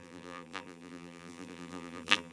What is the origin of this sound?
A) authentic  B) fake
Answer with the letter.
B